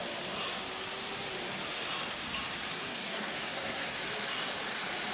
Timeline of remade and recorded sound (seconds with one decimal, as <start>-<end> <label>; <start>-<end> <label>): 0.0-2.9 recorded; 2.9-3.9 remade; 3.9-5.1 recorded